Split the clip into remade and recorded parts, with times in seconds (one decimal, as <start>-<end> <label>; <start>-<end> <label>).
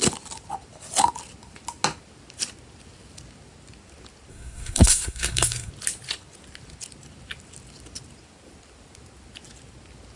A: 0.0-4.3 recorded; 4.3-5.7 remade; 5.7-10.2 recorded